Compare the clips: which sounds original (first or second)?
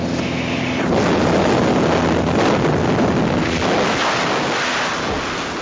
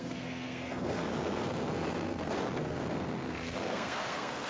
first